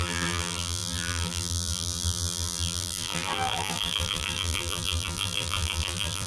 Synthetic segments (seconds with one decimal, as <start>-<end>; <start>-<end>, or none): 0.0-6.3